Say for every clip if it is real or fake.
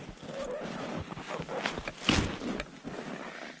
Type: real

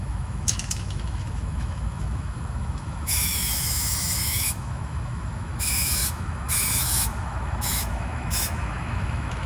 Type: fake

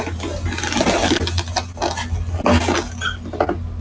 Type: real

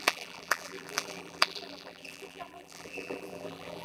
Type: fake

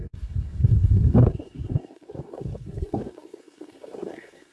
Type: fake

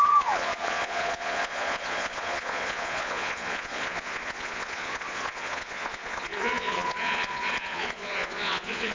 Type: fake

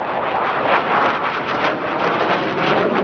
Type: real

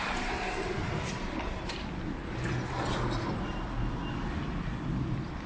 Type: real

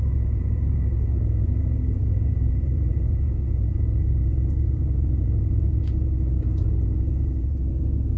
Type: fake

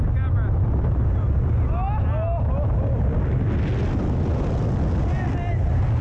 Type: real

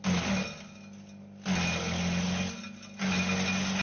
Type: real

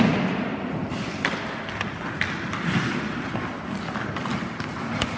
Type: real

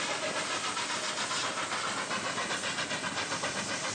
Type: real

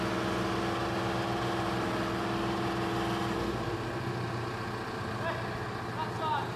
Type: real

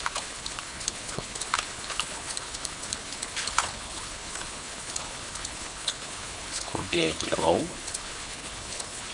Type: fake